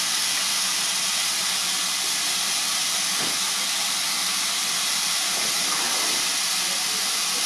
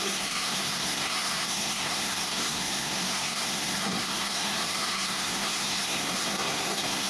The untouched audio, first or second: first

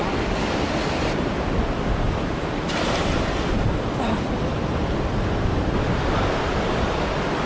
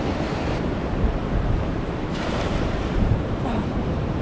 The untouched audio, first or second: first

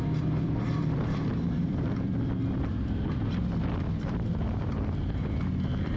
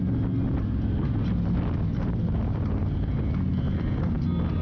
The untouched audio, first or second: second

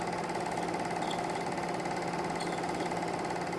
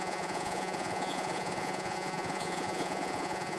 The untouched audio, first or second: first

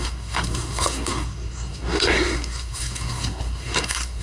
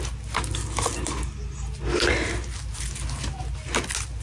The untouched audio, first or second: second